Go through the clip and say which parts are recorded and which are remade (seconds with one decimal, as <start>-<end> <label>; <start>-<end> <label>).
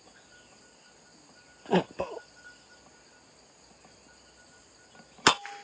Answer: 0.0-5.6 recorded